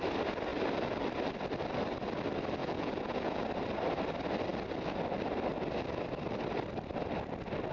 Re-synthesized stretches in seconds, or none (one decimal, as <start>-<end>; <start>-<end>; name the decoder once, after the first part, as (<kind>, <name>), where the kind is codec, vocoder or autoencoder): 2.6-3.4 (vocoder, Vocos)